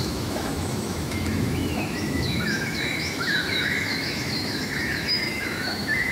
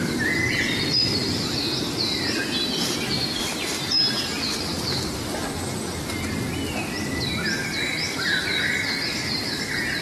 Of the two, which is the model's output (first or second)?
first